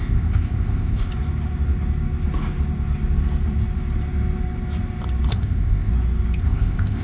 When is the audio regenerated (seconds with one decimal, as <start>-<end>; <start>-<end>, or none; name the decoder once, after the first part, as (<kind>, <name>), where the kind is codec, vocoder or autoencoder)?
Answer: 0.0-1.1 (codec, ZipCodec); 5.3-5.9; 6.4-7.0